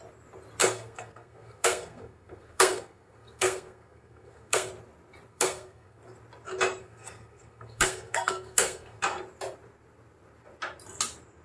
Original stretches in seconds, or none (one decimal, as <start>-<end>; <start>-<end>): 0.0-0.6; 4.7-5.3; 6.0-6.8; 9.0-11.4